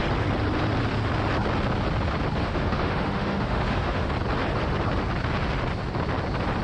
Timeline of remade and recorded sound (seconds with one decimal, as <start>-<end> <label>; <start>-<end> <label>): 0.0-2.4 recorded; 2.4-4.1 remade; 4.1-6.6 recorded